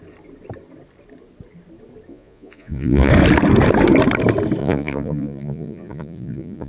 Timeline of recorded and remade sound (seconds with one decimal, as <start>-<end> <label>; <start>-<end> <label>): 0.0-2.1 recorded; 2.1-3.1 remade; 3.1-4.6 recorded; 4.6-6.7 remade